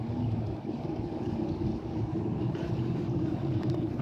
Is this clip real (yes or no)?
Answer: no